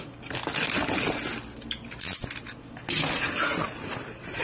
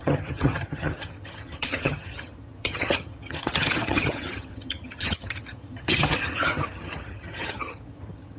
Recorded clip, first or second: first